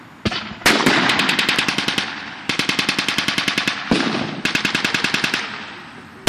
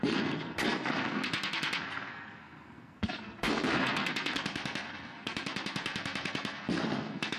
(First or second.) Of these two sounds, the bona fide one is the first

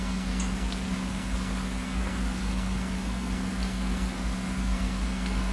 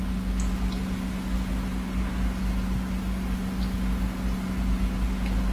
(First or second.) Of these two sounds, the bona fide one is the second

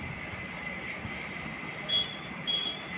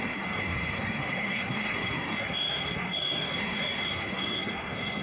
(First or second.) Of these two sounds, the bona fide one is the first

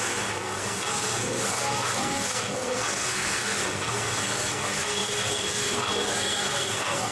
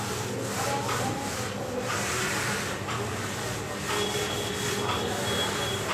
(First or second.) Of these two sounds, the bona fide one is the second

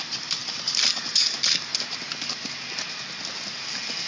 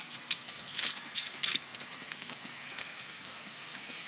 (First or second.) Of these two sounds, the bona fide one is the first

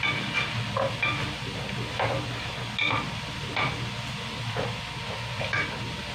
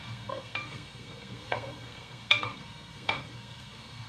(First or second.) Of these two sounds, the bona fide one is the first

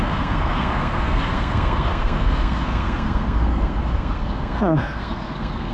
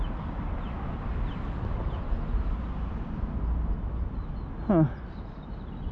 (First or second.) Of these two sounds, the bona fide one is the second